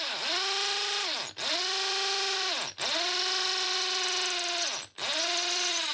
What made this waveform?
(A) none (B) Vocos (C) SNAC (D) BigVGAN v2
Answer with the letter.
D